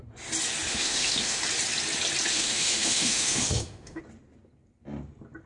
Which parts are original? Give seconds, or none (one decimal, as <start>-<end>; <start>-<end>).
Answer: 0.0-0.7; 1.4-2.3; 4.0-5.5